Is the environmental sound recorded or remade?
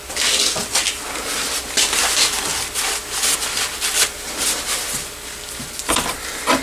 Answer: recorded